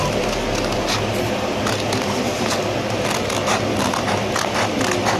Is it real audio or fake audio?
real